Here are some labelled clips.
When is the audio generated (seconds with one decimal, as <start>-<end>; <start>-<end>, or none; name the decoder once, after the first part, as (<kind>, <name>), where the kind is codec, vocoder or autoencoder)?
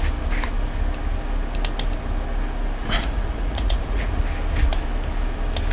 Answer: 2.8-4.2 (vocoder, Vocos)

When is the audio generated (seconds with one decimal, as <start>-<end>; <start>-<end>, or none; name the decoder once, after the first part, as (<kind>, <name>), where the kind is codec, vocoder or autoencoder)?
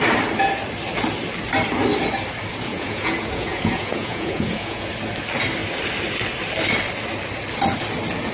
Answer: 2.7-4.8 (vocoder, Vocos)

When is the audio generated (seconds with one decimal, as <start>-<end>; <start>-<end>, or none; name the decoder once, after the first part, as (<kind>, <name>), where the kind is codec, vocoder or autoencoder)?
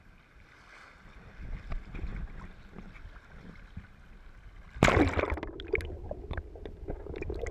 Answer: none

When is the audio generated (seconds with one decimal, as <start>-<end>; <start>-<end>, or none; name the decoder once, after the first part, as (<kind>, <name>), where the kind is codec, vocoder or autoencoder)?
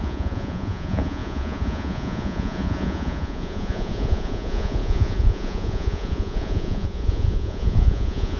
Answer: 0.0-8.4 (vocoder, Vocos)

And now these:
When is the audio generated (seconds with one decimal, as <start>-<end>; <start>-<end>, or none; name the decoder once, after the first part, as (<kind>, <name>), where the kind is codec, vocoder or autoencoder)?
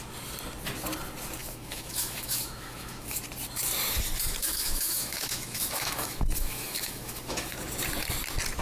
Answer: 1.4-3.2 (autoencoder, DAC-VAE); 4.4-7.6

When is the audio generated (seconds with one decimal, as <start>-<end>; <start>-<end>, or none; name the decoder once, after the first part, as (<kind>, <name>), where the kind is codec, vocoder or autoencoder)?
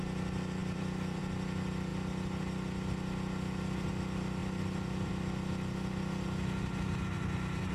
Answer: 0.6-1.2 (vocoder, BigVGAN v2); 4.4-5.1